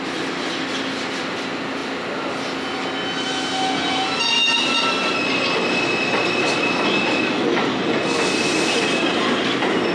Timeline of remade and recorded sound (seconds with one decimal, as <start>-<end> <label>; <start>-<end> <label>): 0.0-9.9 recorded